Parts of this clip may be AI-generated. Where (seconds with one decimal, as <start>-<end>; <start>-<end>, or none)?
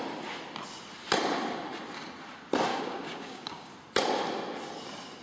2.7-3.7